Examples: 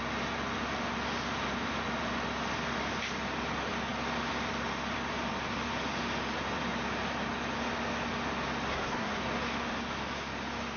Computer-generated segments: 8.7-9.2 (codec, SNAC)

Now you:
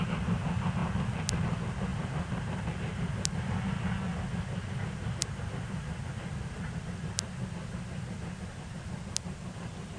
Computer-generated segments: 1.9-3.5 (vocoder, BigVGAN v2); 5.2-6.6

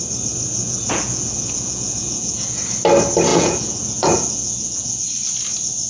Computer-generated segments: 0.6-2.6 (vocoder, Vocos); 3.3-5.0

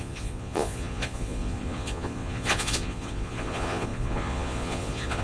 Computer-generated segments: 0.0-5.2 (vocoder, Vocos)

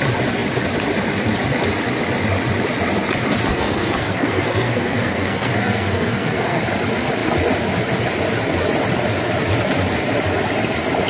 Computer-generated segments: 3.5-6.6 (codec, SNAC)